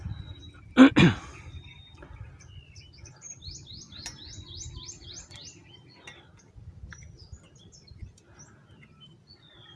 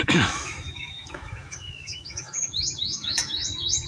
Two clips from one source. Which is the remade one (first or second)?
second